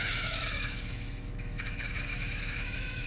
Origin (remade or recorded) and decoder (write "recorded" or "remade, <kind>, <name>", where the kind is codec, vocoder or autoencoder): remade, autoencoder, DAC-VAE